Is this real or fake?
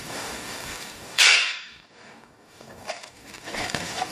fake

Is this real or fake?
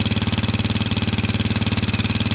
real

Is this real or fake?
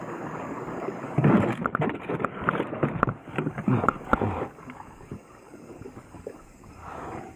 fake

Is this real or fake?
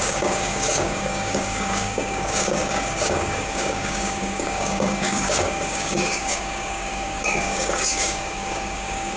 fake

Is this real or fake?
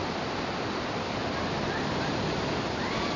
real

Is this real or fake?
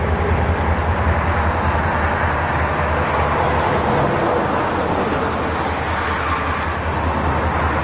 real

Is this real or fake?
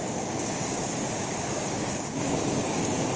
fake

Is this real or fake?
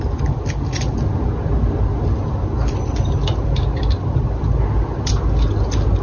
real